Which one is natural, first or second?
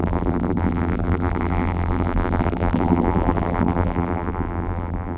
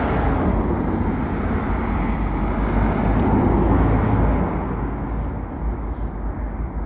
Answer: second